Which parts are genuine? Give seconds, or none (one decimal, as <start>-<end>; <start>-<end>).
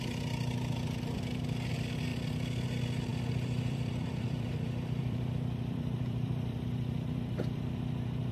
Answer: 0.0-2.1; 2.7-3.1; 7.8-8.3